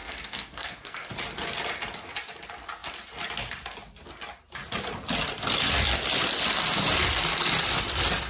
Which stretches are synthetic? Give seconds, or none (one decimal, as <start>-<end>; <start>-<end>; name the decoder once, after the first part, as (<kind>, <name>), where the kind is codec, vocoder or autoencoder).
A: 0.0-1.1 (codec, SNAC)